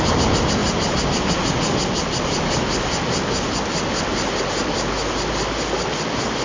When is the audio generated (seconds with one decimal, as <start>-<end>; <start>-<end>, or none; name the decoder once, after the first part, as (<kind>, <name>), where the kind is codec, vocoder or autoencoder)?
none